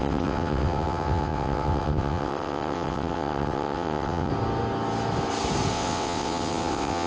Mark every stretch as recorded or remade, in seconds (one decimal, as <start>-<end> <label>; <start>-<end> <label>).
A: 0.0-4.3 remade; 4.3-5.7 recorded; 5.7-7.1 remade